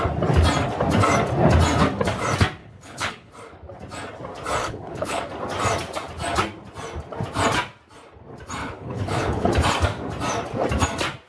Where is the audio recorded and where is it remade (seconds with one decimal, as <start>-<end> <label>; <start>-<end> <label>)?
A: 0.0-2.6 recorded; 2.6-3.3 remade; 3.3-4.6 recorded; 4.6-5.2 remade; 5.2-8.6 recorded; 8.6-9.5 remade; 9.5-11.3 recorded